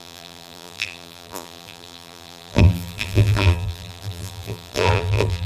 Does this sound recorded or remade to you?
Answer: remade